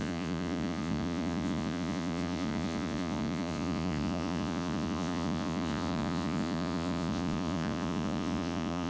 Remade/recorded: remade